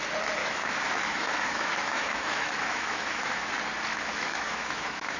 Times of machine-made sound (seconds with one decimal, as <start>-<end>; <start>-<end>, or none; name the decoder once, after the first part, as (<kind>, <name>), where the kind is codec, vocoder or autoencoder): 0.4-3.5 (autoencoder, DAC-VAE); 3.9-5.2